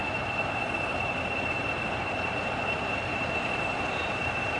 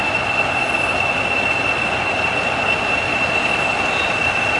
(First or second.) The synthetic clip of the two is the first